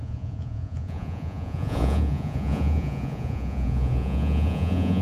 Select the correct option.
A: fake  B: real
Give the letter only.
A